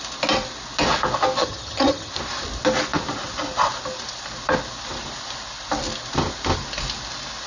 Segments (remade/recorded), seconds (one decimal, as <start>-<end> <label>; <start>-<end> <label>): 0.0-1.4 recorded; 1.4-2.1 remade; 2.1-7.5 recorded